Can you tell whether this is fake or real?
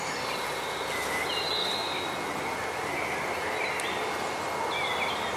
real